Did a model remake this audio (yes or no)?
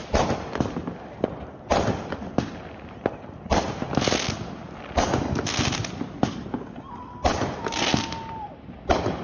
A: no